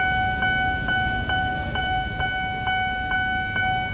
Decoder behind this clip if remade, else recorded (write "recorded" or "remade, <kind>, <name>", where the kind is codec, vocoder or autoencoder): recorded